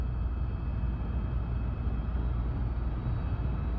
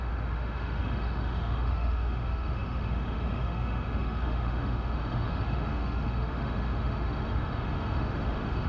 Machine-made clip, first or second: second